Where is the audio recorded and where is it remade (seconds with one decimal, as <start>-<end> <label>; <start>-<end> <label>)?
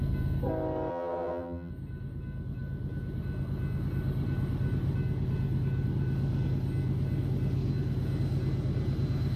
0.0-0.9 recorded; 0.9-1.7 remade; 1.7-9.4 recorded